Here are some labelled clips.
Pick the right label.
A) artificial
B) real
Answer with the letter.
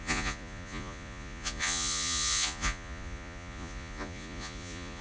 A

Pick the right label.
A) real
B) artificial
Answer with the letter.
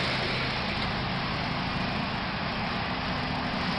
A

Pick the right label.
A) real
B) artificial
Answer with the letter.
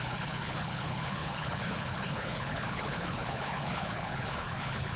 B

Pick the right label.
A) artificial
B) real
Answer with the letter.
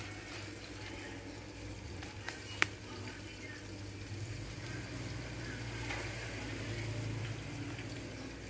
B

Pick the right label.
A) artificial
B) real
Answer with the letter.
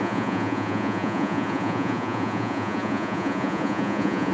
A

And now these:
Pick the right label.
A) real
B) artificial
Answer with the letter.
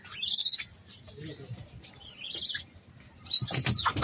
A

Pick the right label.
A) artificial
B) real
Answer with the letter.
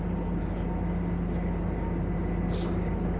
B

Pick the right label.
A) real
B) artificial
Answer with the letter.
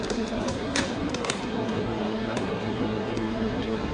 B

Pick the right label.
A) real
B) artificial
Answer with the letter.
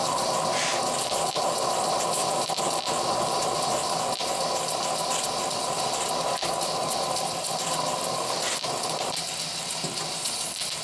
A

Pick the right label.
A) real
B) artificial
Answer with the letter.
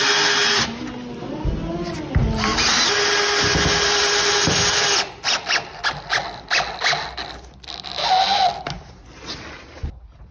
A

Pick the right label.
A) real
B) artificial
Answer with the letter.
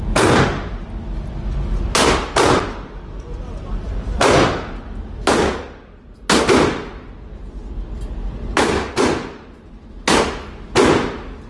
A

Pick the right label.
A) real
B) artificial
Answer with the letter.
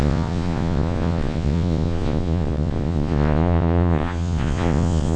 B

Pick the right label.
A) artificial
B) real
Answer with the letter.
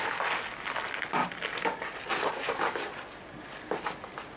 B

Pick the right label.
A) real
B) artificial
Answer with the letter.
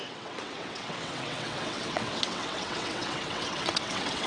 B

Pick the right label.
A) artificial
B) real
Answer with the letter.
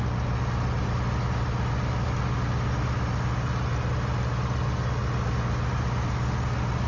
B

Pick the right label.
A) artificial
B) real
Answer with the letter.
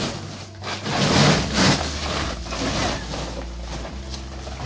B